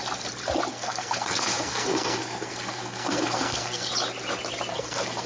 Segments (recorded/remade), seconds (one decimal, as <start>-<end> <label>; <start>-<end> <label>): 0.0-0.7 recorded; 0.7-3.9 remade; 3.9-4.7 recorded; 4.7-5.3 remade